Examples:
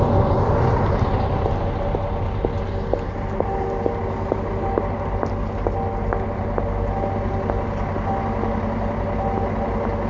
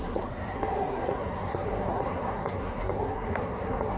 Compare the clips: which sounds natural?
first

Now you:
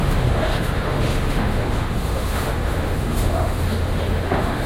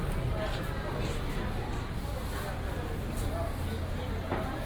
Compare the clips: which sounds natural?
second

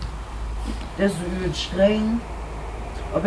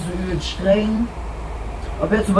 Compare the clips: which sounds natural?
first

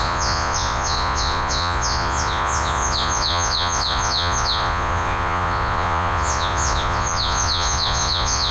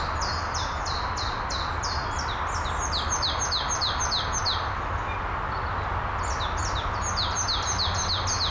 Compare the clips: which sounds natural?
second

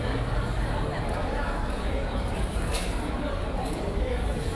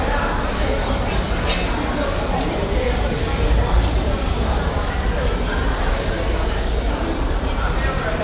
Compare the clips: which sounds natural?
second